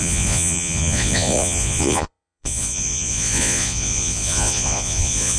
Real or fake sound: fake